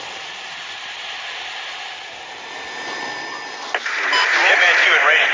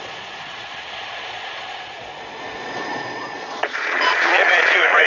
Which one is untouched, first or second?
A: first